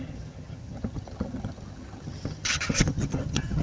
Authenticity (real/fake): fake